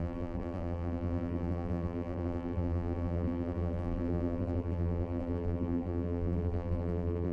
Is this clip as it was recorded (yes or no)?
no